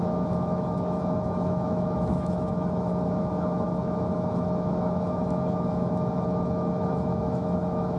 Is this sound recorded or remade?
remade